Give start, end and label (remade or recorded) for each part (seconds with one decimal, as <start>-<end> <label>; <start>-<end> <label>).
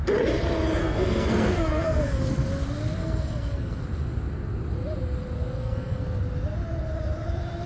0.0-0.8 recorded; 0.8-2.2 remade; 2.2-3.0 recorded; 3.0-3.8 remade; 3.8-5.6 recorded; 5.6-6.2 remade; 6.2-7.7 recorded